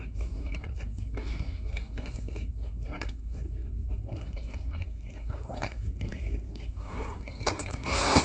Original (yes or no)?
no